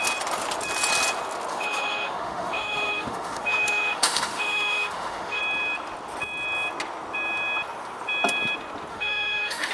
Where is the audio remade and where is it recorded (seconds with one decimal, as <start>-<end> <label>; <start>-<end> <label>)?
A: 0.0-1.5 recorded; 1.5-5.4 remade; 5.4-8.9 recorded; 8.9-9.7 remade